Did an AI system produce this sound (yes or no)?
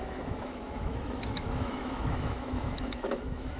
yes